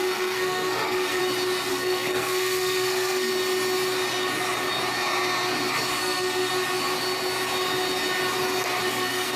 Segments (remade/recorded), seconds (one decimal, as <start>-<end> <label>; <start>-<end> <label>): 0.0-1.2 remade; 1.2-1.7 recorded; 1.7-3.3 remade; 3.3-6.0 recorded; 6.0-6.5 remade; 6.5-8.9 recorded; 8.9-9.4 remade

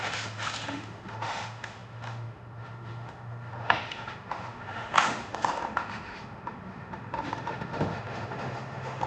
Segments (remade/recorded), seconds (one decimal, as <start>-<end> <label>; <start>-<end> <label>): 0.0-9.1 remade

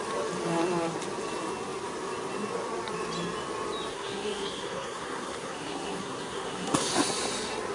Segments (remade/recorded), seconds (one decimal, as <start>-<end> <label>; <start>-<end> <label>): 0.0-3.9 recorded; 3.9-6.9 remade; 6.9-7.7 recorded

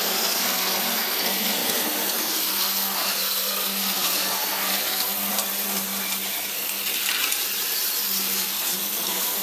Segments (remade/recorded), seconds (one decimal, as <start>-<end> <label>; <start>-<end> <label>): 0.0-5.3 remade; 5.3-6.5 recorded; 6.5-6.9 remade; 6.9-8.2 recorded; 8.2-9.4 remade